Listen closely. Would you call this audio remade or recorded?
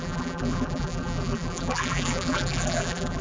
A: remade